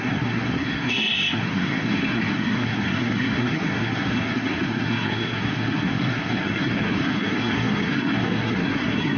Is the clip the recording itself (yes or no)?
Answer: no